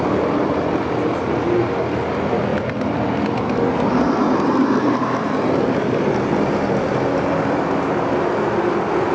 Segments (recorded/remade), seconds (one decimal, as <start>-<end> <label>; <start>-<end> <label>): 0.0-1.2 recorded; 1.2-1.8 remade; 1.8-9.1 recorded